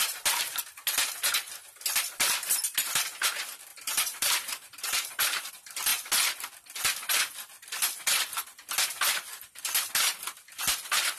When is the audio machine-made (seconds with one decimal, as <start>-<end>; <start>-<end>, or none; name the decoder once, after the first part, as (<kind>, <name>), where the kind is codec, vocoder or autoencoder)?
3.7-5.5 (vocoder, BigVGAN v2)